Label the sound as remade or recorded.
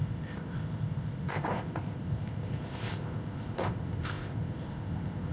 remade